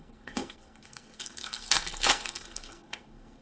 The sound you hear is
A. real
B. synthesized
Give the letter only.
B